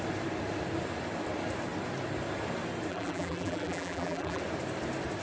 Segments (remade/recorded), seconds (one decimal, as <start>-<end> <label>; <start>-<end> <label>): 0.0-2.9 recorded; 2.9-4.4 remade; 4.4-5.2 recorded